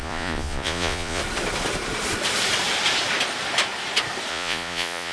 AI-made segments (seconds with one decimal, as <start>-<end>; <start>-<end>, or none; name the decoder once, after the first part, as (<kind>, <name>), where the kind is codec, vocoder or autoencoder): 0.0-1.2 (vocoder, Vocos); 4.3-5.1